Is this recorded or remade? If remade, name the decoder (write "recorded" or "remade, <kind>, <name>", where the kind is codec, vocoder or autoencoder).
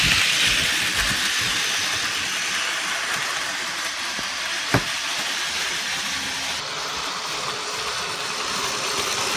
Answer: recorded